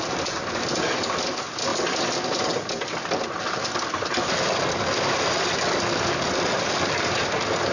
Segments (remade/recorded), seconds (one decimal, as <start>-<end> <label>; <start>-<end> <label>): 0.0-7.7 remade